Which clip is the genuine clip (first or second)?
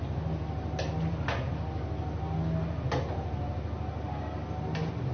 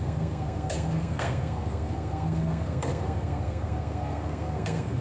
first